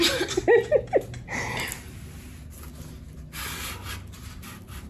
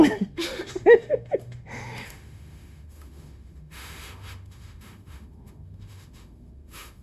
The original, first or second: first